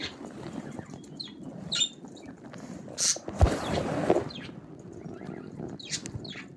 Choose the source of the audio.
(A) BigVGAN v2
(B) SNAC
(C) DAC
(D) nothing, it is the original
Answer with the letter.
D